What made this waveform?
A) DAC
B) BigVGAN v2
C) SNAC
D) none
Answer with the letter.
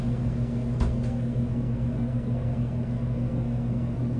C